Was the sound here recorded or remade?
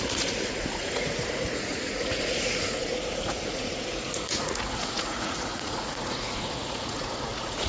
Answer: remade